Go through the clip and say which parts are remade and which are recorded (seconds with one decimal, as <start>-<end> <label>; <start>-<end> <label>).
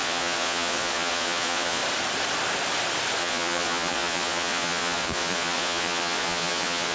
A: 0.0-1.8 remade; 1.8-3.2 recorded; 3.2-6.9 remade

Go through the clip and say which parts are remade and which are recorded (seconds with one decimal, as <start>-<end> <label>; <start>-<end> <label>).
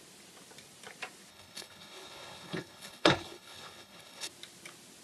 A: 0.0-1.3 recorded; 1.3-4.3 remade; 4.3-5.0 recorded